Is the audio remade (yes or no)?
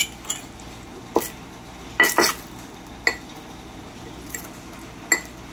no